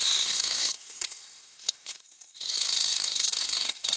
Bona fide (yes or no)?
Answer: no